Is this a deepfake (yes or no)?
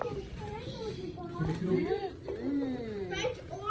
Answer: yes